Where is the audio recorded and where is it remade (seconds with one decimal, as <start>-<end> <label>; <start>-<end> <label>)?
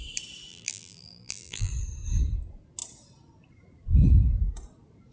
0.0-0.5 recorded; 0.5-1.7 remade; 1.7-5.1 recorded